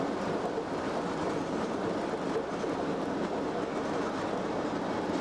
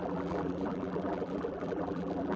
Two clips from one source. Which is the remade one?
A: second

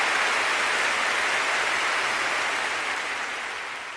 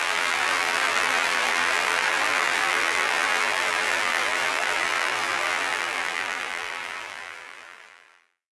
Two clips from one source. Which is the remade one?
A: second